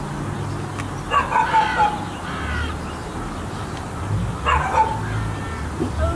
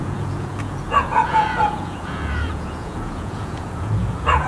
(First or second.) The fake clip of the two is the second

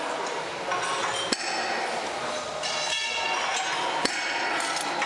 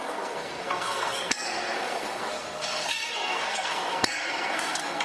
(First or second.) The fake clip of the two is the second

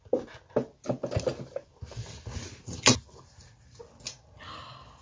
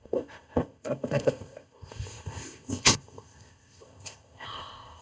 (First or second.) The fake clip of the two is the second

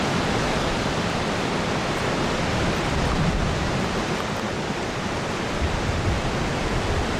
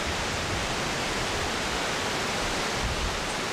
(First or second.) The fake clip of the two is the first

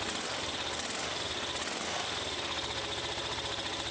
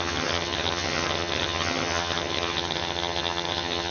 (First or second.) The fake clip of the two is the second